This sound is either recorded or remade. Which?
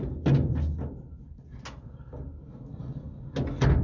recorded